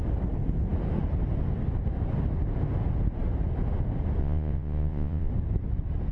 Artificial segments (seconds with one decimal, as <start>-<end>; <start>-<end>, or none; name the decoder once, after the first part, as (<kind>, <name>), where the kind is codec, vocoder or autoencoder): 4.2-5.3 (vocoder, Vocos)